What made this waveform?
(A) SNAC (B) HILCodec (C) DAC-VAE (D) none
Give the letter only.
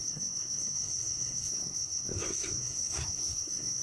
A